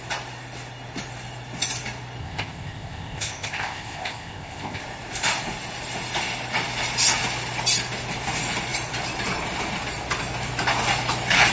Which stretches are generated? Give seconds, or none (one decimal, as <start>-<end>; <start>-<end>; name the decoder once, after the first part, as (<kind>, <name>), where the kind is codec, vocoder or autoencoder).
2.2-4.8 (codec, ZipCodec)